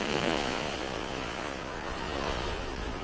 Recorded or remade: remade